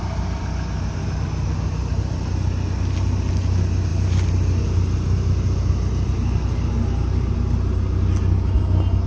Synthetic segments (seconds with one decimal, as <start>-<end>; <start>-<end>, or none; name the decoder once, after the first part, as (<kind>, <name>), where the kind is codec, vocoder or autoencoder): none